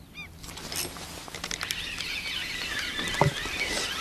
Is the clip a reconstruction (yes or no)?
no